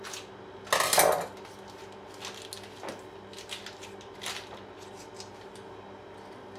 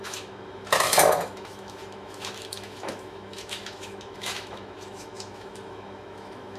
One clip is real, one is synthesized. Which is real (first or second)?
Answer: first